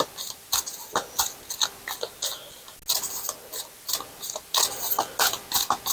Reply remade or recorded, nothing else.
recorded